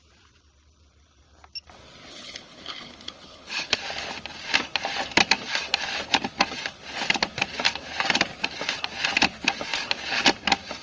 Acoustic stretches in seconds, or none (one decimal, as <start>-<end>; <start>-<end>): 0.0-2.1; 3.8-10.8

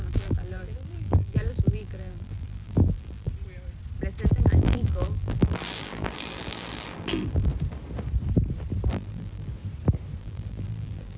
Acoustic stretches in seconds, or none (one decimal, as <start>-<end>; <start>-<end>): 3.3-4.3; 7.5-8.9; 9.5-10.2

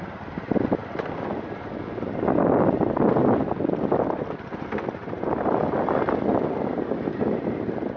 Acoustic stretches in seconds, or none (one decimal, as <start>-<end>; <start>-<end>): 0.0-8.0

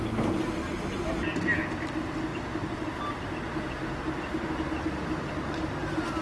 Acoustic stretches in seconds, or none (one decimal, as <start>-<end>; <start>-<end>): 0.0-6.2

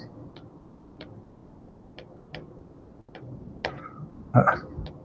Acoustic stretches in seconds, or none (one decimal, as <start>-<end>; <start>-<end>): 0.0-5.0